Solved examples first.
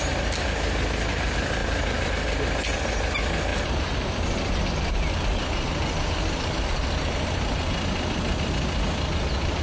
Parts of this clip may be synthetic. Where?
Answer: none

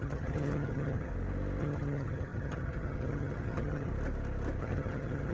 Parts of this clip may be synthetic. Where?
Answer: 0.0-1.1 (vocoder, HiFi-GAN); 1.6-3.9; 4.6-5.3

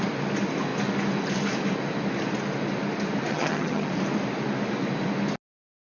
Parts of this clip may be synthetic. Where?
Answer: 3.3-3.9 (vocoder, HiFi-GAN)

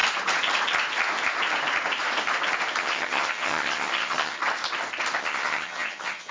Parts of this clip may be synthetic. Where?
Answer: 2.8-4.4 (vocoder, HiFi-GAN); 5.2-6.3

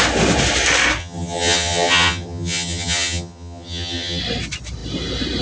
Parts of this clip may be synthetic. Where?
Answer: 1.0-4.2 (vocoder, HiFi-GAN)